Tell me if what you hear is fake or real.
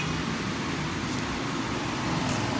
fake